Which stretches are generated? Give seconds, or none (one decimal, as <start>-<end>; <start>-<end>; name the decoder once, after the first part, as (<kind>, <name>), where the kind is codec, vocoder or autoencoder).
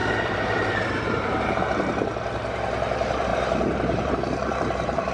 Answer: 0.0-5.1 (vocoder, BigVGAN v2)